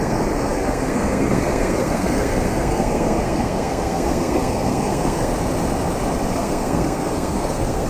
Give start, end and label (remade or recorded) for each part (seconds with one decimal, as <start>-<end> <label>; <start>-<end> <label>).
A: 0.0-5.3 remade; 5.3-6.3 recorded; 6.3-7.9 remade